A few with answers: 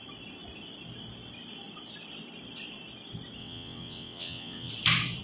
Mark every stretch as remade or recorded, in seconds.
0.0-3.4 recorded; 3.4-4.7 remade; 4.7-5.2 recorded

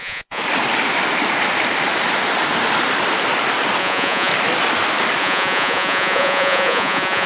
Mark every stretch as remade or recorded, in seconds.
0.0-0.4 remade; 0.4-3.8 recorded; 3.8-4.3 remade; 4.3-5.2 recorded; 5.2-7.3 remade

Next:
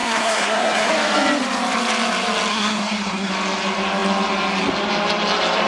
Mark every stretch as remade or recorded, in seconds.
0.0-0.9 remade; 0.9-2.5 recorded; 2.5-3.3 remade; 3.3-5.7 recorded